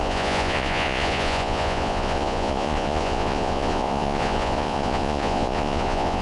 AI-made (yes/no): yes